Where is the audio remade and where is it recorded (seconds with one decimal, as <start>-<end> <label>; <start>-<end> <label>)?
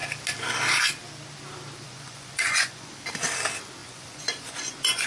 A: 0.0-1.8 recorded; 1.8-2.9 remade; 2.9-3.8 recorded; 3.8-5.1 remade